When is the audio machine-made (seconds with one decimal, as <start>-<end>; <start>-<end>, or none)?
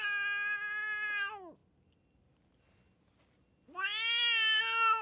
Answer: none